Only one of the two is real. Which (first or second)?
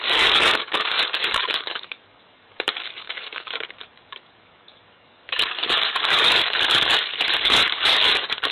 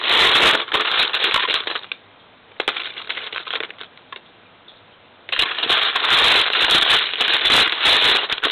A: second